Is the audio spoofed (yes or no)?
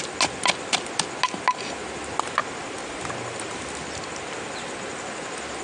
no